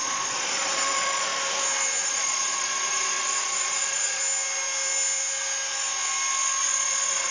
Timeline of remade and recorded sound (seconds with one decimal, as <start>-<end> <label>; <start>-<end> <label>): 0.0-1.3 remade; 1.3-2.0 recorded; 2.0-4.2 remade; 4.2-6.6 recorded; 6.6-7.3 remade